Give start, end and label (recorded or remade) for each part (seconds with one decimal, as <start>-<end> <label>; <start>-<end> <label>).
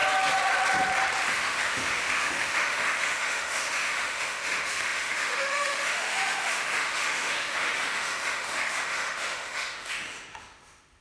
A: 0.0-1.3 recorded; 1.3-11.0 remade